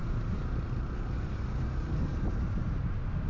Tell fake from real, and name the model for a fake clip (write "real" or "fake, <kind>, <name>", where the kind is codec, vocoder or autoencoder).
real